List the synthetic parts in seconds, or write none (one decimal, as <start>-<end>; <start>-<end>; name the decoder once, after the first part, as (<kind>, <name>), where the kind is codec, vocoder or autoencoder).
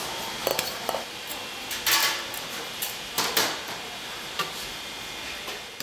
0.5-1.3 (vocoder, BigVGAN v2); 2.0-4.6